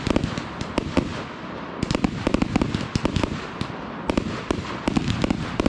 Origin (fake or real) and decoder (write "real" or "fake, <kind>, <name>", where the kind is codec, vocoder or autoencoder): real